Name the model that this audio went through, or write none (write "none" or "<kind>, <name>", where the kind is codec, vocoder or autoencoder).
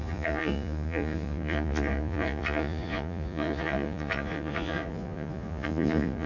vocoder, Vocos